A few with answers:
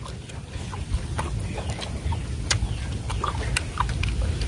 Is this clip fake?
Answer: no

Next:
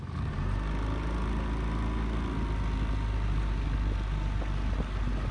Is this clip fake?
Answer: no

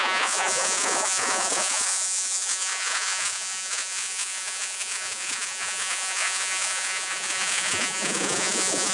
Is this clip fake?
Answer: yes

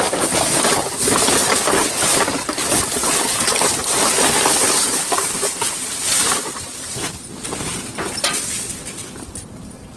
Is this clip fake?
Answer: no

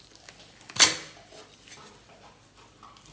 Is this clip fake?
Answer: no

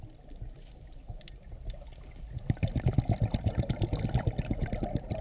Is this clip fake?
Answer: no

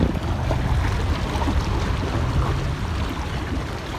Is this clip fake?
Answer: no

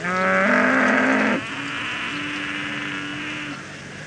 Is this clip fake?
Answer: no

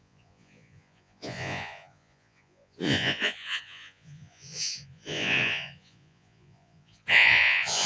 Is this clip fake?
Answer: yes